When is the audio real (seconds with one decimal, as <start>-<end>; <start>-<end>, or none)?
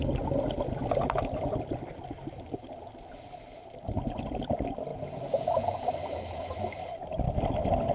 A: 0.0-4.9; 5.9-7.9